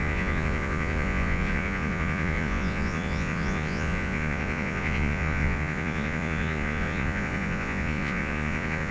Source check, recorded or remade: remade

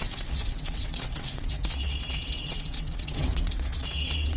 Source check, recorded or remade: remade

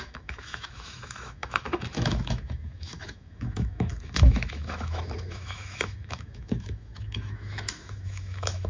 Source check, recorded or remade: remade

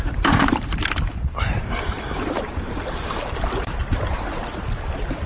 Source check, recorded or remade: remade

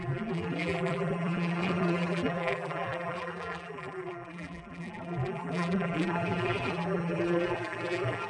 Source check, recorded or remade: remade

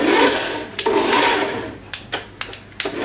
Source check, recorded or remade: recorded